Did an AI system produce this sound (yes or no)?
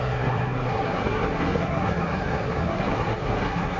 yes